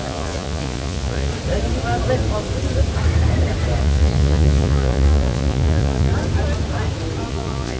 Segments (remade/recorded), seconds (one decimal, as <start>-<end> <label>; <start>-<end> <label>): 0.0-1.3 remade; 1.3-3.8 recorded; 3.8-6.1 remade; 6.1-7.3 recorded; 7.3-7.8 remade